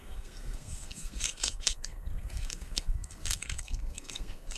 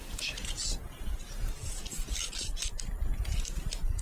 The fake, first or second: first